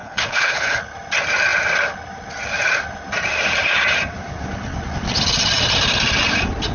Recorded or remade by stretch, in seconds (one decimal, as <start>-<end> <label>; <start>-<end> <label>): 0.0-0.8 remade; 0.8-6.7 recorded